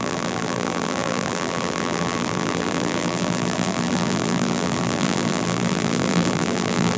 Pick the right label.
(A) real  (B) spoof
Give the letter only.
B